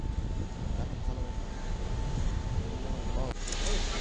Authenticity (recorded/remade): recorded